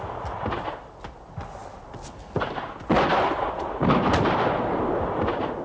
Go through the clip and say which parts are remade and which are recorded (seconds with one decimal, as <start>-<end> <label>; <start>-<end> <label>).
0.0-5.6 recorded